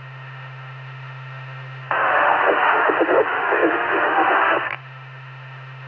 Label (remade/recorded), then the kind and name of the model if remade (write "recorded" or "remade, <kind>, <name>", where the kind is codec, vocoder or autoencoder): remade, autoencoder, DAC-VAE